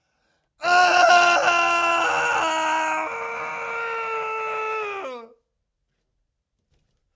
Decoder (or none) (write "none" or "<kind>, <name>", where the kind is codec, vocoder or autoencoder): none